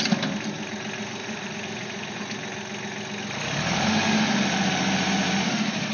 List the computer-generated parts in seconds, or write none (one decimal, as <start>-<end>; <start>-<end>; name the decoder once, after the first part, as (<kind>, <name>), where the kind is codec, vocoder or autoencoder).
1.2-2.2 (vocoder, Vocos)